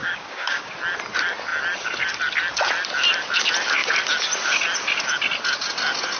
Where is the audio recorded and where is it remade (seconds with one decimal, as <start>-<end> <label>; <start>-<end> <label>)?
0.0-0.7 remade; 0.7-6.2 recorded